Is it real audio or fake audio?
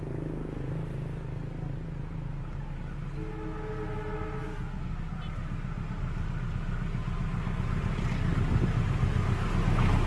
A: real